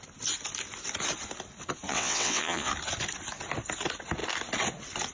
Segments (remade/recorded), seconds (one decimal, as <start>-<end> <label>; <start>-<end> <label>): 0.0-1.9 recorded; 1.9-2.7 remade; 2.7-5.1 recorded